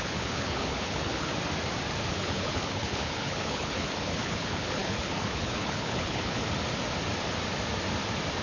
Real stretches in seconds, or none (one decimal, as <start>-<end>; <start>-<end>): 1.3-2.1; 6.4-8.4